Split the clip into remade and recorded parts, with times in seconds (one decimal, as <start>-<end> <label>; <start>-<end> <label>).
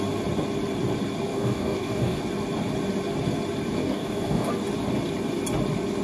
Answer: 0.0-1.3 recorded; 1.3-2.2 remade; 2.2-3.8 recorded; 3.8-4.5 remade; 4.5-6.0 recorded